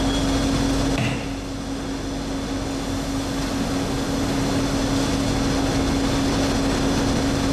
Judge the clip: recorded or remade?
recorded